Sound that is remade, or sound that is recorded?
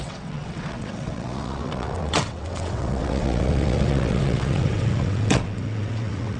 remade